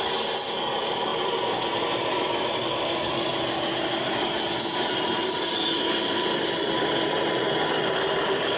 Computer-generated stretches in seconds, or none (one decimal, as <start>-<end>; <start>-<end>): 1.1-2.7